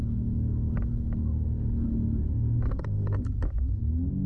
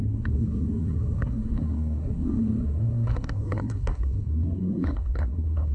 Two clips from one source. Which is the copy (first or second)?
second